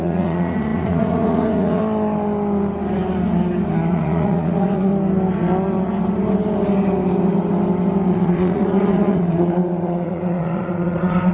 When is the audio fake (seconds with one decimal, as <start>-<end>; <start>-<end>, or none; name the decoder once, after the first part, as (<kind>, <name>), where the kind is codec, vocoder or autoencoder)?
0.0-1.8 (vocoder, Vocos); 3.9-4.9; 8.1-11.3

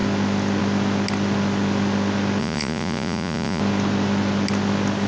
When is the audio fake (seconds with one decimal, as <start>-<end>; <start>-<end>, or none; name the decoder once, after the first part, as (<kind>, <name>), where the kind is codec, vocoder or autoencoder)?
2.4-3.6 (vocoder, Vocos)

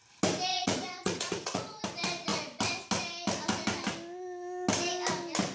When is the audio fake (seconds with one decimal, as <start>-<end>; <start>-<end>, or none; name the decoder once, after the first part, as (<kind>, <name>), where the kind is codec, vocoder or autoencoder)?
0.5-1.8 (vocoder, Vocos)

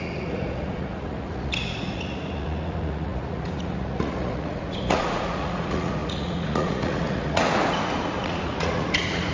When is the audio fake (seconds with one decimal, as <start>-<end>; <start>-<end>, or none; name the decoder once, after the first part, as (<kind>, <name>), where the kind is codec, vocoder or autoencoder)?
0.0-9.3 (vocoder, Vocos)

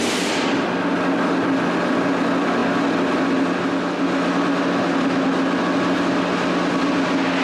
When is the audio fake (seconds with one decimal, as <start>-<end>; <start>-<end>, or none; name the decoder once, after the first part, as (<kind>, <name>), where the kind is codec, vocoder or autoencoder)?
none